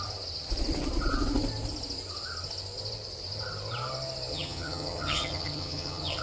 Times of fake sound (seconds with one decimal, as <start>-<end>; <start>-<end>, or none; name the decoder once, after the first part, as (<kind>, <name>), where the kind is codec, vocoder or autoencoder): 4.3-6.2 (vocoder, HiFi-GAN)